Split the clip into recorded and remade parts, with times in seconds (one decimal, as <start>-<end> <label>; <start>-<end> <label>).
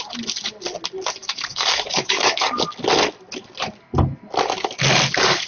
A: 0.0-1.2 recorded; 1.2-2.5 remade; 2.5-5.5 recorded